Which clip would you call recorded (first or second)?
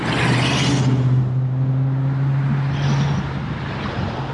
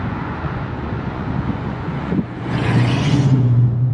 first